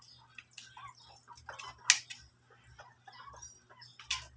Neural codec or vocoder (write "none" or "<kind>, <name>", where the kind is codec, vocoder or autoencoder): none